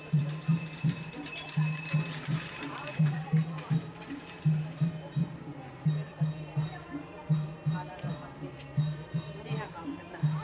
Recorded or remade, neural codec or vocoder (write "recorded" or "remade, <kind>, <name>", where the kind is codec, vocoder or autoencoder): remade, vocoder, BigVGAN v2